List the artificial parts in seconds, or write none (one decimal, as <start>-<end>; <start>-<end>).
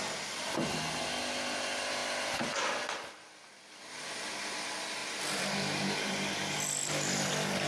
5.0-6.3; 6.8-7.7